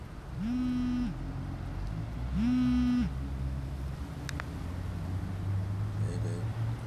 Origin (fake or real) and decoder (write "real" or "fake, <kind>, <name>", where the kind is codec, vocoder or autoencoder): real